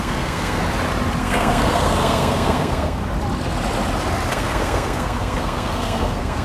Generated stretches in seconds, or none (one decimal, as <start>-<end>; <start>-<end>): 0.0-0.6; 1.2-3.0; 4.3-6.4